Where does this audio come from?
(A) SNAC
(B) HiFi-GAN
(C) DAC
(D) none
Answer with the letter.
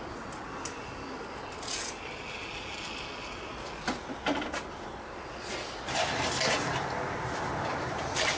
D